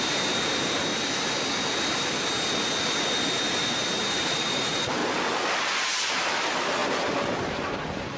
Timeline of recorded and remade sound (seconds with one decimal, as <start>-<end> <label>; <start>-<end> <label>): 0.0-0.9 remade; 0.9-4.2 recorded; 4.2-5.0 remade; 5.0-6.1 recorded; 6.1-8.2 remade